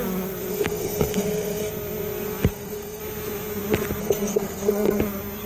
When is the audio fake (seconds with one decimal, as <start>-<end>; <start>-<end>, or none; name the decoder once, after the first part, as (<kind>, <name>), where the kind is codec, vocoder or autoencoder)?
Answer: 0.5-1.7 (codec, SNAC); 2.5-3.0; 4.0-5.0